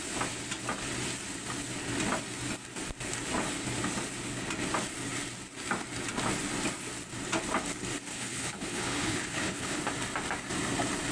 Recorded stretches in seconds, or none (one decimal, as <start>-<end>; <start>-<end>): 0.0-8.1; 9.8-11.1